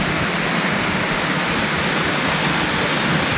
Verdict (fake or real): real